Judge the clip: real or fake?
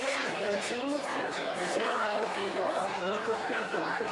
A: fake